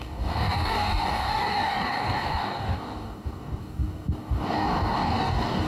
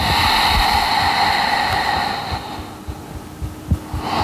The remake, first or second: first